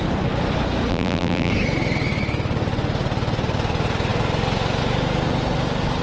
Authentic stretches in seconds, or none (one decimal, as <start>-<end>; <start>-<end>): 0.0-0.9; 1.5-6.0